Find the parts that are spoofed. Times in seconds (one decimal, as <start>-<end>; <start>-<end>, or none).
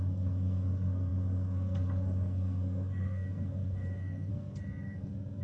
0.0-5.4